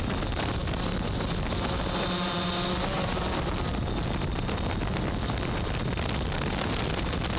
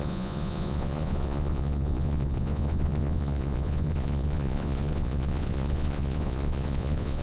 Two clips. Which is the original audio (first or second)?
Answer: first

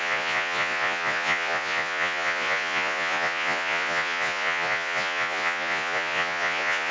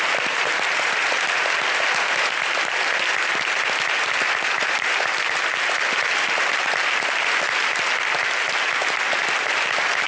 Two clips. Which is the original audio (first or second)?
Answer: second